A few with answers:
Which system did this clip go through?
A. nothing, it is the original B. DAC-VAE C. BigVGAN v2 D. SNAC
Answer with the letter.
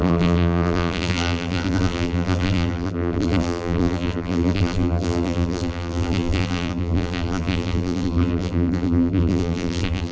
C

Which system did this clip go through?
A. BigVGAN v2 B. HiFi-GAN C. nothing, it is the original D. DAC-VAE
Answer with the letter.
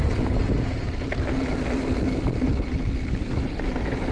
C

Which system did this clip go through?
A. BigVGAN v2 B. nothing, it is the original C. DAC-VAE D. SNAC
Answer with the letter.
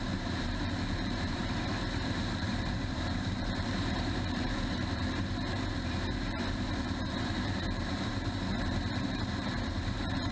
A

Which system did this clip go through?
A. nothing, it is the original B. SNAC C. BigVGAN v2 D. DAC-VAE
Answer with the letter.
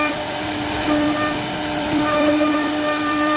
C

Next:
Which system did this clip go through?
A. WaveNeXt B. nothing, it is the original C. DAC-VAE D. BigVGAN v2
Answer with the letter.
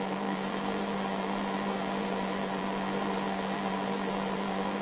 D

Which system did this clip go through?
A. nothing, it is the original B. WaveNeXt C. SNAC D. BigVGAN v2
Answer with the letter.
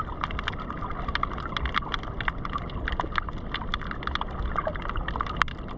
A